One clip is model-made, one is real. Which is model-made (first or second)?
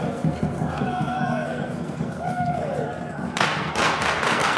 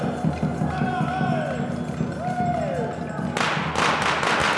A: first